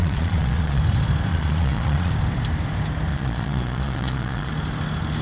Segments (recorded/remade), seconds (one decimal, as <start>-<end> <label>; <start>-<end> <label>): 0.0-0.8 remade; 0.8-1.3 recorded; 1.3-2.1 remade; 2.1-3.1 recorded; 3.1-4.5 remade; 4.5-5.2 recorded